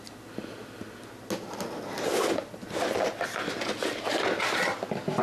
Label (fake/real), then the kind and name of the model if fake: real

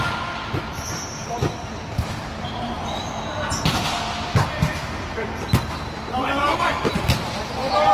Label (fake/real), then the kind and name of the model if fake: real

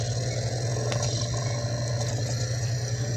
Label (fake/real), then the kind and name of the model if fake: real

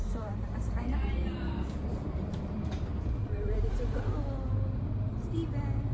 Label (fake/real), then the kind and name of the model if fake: fake, vocoder, BigVGAN v2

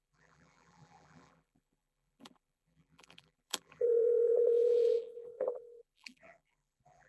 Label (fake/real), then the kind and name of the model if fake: fake, vocoder, BigVGAN v2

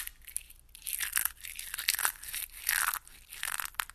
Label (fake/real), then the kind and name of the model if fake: real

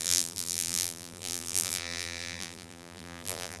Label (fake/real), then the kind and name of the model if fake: fake, vocoder, BigVGAN v2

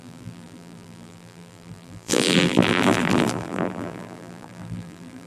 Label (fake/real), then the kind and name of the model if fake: fake, vocoder, BigVGAN v2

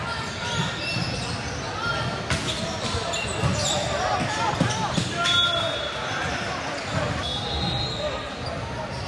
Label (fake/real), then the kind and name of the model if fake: real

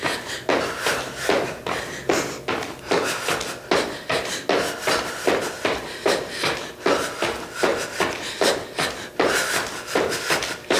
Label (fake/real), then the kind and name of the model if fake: real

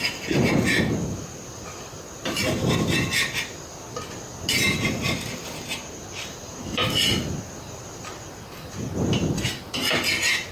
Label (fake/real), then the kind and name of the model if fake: fake, vocoder, BigVGAN v2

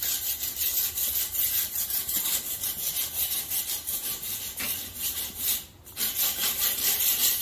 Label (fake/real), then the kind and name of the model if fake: fake, vocoder, BigVGAN v2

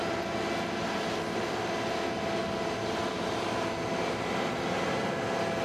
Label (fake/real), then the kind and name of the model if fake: real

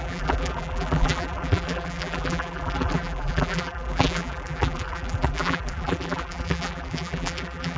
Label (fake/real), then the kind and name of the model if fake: fake, vocoder, BigVGAN v2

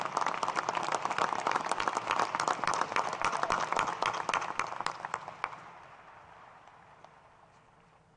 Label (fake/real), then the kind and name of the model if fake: fake, vocoder, BigVGAN v2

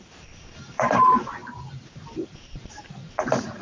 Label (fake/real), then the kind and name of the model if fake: fake, vocoder, BigVGAN v2